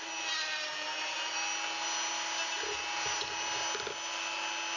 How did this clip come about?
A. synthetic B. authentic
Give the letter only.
B